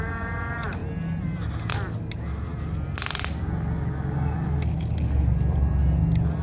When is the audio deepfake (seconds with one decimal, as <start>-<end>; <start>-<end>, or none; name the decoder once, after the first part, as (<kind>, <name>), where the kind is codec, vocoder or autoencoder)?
none